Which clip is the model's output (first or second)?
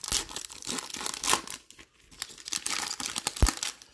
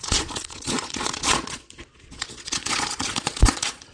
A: second